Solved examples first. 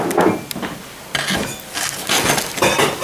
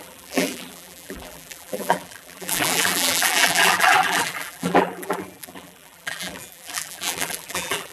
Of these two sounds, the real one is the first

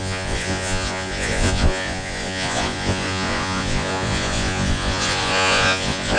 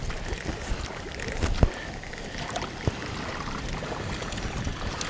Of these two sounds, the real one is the second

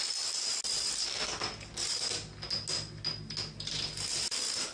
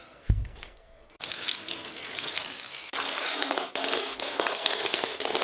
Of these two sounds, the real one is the first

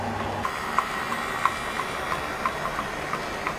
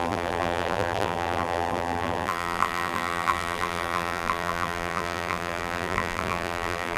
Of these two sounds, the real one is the first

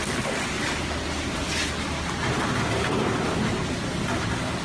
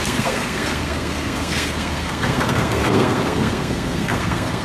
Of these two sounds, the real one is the first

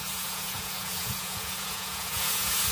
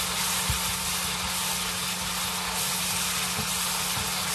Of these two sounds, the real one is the second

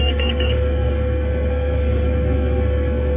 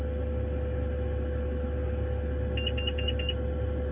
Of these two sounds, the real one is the second